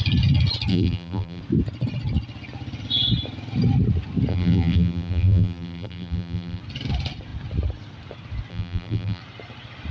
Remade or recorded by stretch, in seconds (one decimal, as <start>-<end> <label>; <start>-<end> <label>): 0.0-0.7 recorded; 0.7-1.4 remade; 1.4-4.3 recorded; 4.3-6.6 remade; 6.6-8.5 recorded; 8.5-9.2 remade; 9.2-9.9 recorded